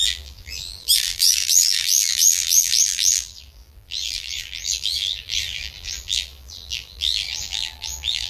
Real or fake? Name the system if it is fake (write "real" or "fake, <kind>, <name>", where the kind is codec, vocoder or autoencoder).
fake, vocoder, BigVGAN v2